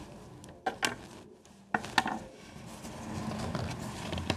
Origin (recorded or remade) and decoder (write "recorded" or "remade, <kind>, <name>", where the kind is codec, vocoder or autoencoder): recorded